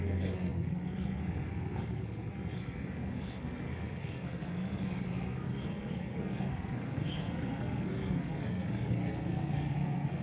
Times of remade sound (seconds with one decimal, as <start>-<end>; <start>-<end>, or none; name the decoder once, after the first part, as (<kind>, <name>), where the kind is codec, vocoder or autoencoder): 0.0-10.2 (codec, SNAC)